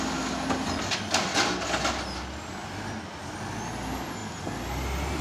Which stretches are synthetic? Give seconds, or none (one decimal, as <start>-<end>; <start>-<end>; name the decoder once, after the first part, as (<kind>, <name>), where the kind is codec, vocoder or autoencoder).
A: none